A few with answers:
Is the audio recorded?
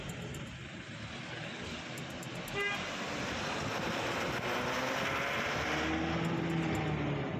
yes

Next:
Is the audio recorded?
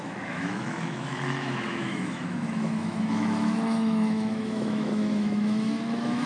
no